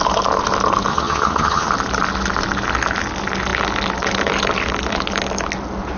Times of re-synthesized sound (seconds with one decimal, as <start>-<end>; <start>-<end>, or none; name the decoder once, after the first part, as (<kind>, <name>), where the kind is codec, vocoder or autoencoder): 0.9-1.7 (vocoder, HiFi-GAN)

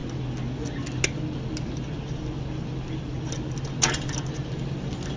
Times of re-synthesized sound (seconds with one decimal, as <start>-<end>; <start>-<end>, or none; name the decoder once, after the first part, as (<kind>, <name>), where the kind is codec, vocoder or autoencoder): none

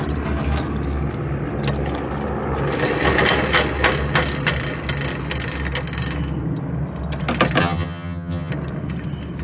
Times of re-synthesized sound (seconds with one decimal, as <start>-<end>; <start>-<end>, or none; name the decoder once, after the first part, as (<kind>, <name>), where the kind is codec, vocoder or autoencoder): 7.6-8.5 (vocoder, HiFi-GAN)

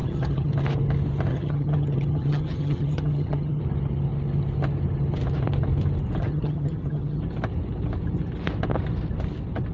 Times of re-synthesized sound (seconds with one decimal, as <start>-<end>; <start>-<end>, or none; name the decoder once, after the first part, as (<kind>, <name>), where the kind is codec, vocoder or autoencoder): 0.0-0.5 (vocoder, HiFi-GAN); 1.3-3.6; 6.2-7.2

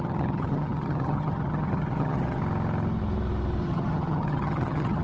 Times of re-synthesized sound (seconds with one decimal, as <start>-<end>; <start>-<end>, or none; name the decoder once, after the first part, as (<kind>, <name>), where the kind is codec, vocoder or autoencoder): 0.0-2.4 (vocoder, HiFi-GAN); 3.6-5.0

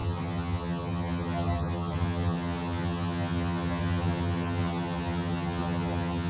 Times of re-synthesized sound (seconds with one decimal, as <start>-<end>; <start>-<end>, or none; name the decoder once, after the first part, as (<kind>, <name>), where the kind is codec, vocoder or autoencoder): 0.0-6.3 (vocoder, HiFi-GAN)